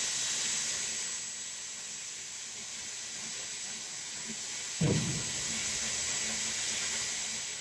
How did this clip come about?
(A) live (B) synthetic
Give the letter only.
A